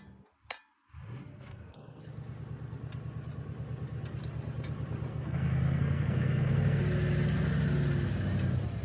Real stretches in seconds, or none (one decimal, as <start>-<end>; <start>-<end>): 0.0-1.3; 2.0-5.1; 6.8-8.8